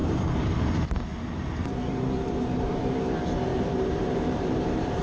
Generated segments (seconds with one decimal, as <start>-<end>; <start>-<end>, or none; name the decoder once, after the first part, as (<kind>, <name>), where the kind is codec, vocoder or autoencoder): 0.0-3.0 (vocoder, BigVGAN v2); 3.5-5.0